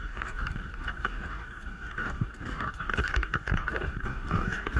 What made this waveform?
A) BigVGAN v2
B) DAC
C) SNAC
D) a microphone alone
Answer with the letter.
B